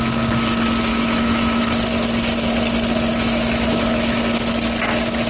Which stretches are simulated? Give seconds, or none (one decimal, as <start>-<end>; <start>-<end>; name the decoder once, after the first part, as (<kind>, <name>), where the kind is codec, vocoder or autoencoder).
0.9-1.6 (autoencoder, DAC-VAE); 3.1-4.2